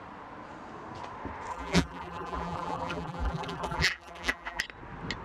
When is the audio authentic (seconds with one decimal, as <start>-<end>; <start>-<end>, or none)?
0.0-1.5; 4.6-5.2